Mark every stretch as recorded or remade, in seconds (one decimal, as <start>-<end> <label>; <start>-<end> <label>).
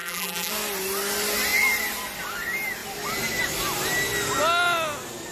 0.0-0.5 remade; 0.5-5.3 recorded